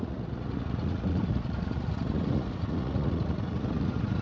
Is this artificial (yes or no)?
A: yes